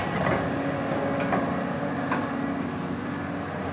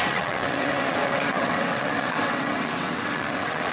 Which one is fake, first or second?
second